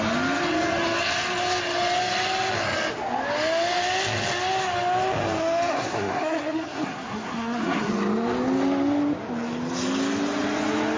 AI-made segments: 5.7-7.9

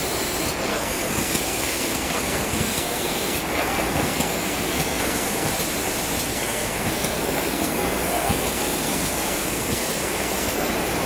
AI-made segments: 0.7-5.5; 6.3-10.7

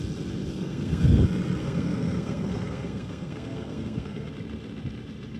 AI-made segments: 0.5-1.2; 1.6-4.3

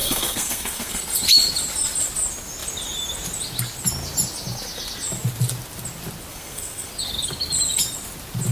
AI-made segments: 0.0-1.0; 6.3-6.9